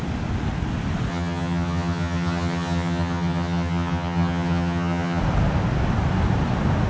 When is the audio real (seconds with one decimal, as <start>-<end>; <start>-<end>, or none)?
0.0-1.1; 5.2-6.9